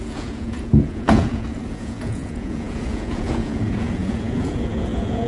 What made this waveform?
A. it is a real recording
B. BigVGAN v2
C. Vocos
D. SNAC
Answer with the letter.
C